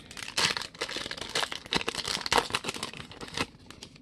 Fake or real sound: real